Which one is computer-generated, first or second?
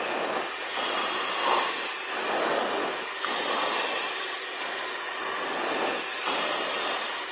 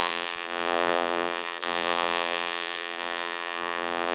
second